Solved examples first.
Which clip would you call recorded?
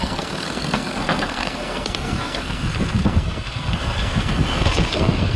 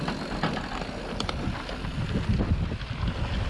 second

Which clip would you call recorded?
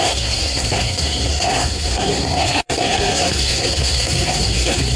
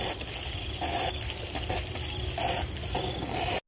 second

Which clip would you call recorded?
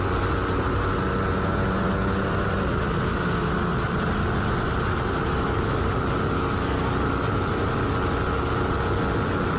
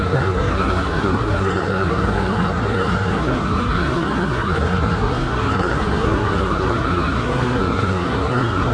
first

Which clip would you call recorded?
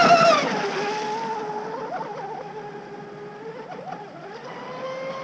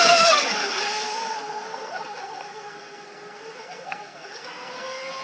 first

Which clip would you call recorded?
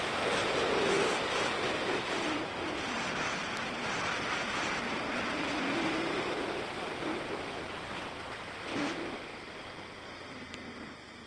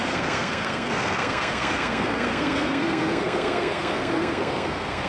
first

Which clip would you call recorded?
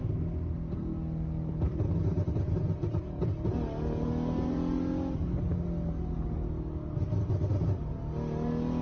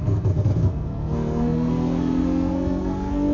first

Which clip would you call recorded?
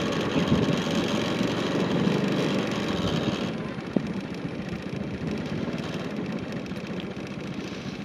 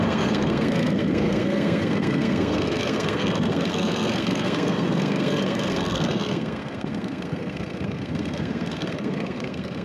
first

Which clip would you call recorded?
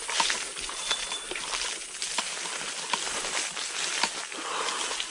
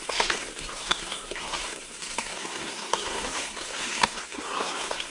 first